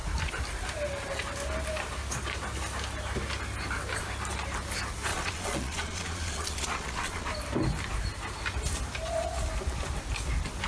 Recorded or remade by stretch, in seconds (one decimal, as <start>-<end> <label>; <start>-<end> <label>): 0.0-5.1 recorded; 5.1-7.3 remade; 7.3-10.7 recorded